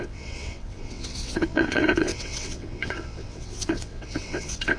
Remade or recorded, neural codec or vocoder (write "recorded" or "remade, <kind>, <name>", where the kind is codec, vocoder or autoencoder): remade, vocoder, WaveNeXt